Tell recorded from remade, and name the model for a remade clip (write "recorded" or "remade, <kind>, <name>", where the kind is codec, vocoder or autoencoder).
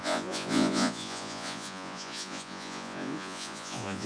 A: remade, vocoder, Vocos